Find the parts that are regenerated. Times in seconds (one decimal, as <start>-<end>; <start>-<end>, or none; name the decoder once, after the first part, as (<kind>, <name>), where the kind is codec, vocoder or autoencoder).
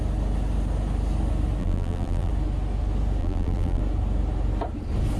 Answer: 1.6-2.3 (vocoder, BigVGAN v2); 3.2-3.8